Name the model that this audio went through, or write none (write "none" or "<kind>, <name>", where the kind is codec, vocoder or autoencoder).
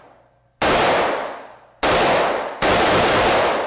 none